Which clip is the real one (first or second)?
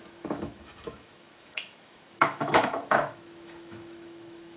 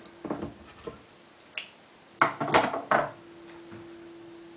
second